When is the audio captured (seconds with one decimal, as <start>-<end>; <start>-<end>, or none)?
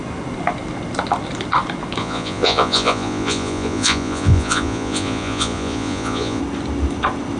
0.0-2.0; 6.4-7.4